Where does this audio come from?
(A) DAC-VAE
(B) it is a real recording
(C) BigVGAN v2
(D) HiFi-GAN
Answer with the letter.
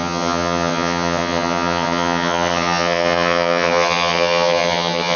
D